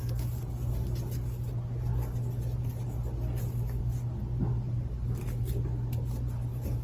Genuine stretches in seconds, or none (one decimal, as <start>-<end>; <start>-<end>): 0.0-6.8